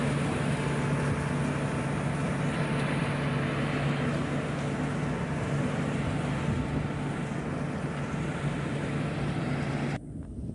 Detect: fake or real real